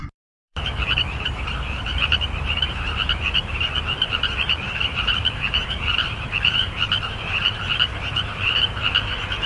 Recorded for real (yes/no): no